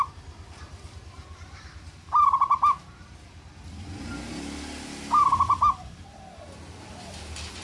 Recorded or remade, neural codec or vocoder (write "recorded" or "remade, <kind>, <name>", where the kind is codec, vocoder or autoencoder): recorded